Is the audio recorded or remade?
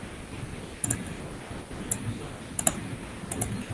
recorded